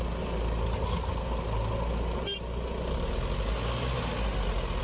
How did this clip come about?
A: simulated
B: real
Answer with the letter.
B